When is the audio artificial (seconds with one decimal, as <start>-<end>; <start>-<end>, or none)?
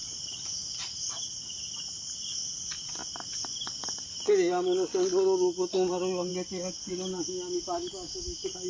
none